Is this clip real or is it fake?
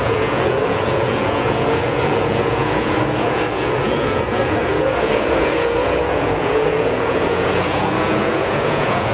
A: fake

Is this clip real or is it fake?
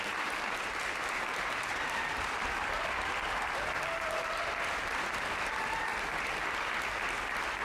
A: real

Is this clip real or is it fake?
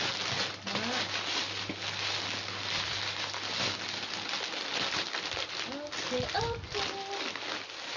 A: real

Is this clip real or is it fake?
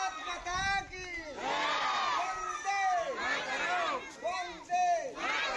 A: real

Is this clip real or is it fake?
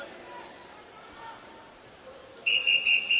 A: fake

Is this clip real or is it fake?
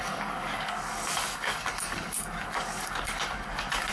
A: fake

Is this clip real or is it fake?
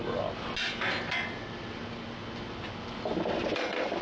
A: real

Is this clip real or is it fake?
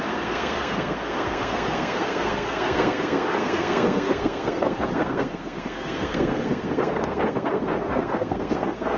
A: fake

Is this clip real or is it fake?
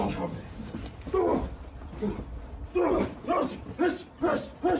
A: real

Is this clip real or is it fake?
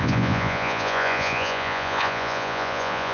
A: fake